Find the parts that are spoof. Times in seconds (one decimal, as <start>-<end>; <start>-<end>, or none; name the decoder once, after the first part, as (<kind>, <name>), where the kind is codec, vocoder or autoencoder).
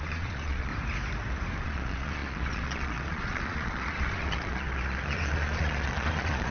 0.0-0.7 (vocoder, Vocos); 1.6-6.5